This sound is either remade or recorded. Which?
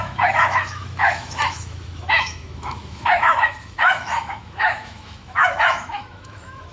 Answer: remade